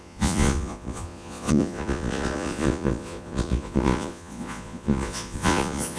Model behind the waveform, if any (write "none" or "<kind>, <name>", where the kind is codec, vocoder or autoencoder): vocoder, Vocos